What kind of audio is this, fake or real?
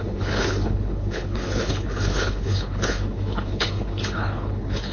fake